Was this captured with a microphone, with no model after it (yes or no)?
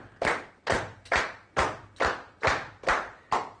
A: yes